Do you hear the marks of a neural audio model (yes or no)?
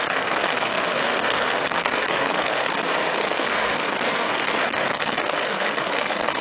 yes